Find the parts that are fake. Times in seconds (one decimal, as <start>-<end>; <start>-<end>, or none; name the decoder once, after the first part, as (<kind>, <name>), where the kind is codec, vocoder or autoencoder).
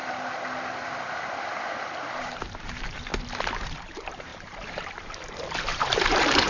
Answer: 2.1-3.1 (vocoder, BigVGAN v2); 3.6-6.5